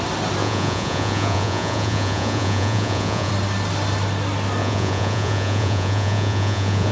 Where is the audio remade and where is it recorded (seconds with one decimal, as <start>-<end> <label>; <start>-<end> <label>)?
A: 0.0-0.4 recorded; 0.4-3.3 remade; 3.3-4.6 recorded; 4.6-6.9 remade